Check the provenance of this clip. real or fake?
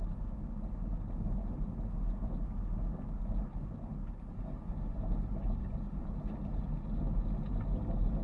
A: real